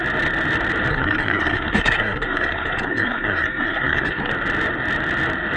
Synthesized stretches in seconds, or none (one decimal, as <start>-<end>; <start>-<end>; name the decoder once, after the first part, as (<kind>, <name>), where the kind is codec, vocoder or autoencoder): 0.9-4.3 (codec, SNAC)